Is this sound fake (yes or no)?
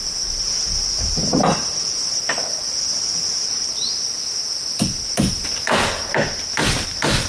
no